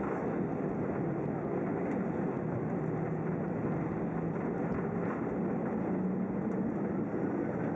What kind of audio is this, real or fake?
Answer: real